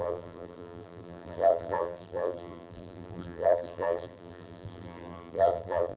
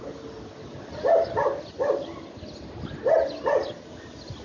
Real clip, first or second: second